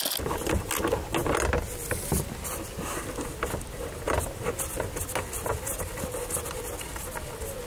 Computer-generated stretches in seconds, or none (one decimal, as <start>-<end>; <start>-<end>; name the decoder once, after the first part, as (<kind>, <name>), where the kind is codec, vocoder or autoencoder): none